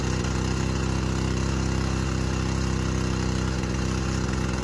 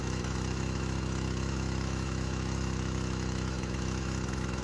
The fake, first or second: second